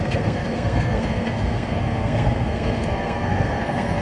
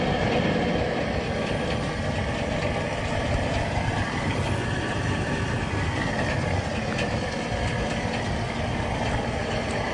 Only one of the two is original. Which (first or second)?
second